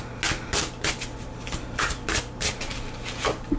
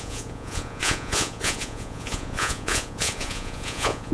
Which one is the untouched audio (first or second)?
first